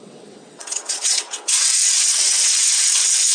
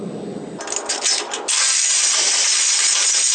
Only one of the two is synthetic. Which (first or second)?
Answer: first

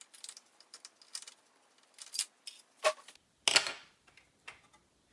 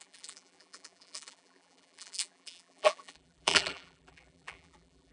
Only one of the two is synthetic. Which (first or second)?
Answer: second